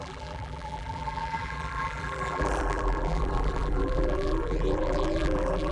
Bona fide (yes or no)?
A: no